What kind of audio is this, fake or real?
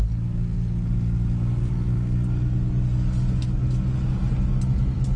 real